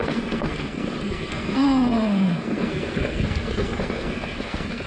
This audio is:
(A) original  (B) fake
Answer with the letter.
B